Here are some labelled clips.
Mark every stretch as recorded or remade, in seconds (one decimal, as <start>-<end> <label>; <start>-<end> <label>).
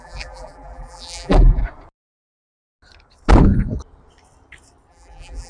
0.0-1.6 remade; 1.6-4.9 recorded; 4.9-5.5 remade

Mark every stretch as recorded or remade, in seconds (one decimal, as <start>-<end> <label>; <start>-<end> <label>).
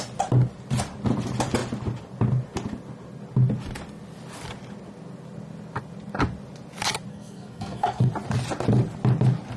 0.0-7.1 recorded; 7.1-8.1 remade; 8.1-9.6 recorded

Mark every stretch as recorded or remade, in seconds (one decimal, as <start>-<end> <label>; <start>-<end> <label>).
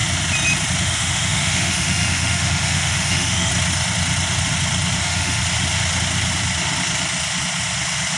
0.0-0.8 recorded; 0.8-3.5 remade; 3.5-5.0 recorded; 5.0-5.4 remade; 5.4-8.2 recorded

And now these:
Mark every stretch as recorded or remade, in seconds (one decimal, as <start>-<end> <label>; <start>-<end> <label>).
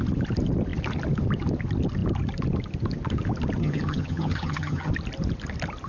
0.0-3.6 recorded; 3.6-4.9 remade; 4.9-5.9 recorded